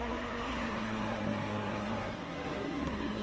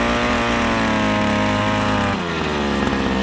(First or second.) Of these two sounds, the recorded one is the second